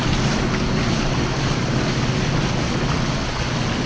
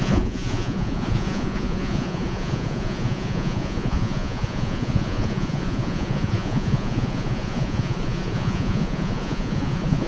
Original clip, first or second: first